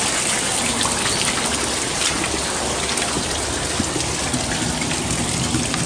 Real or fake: real